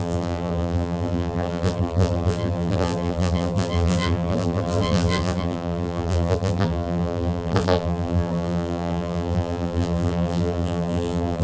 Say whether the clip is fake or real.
fake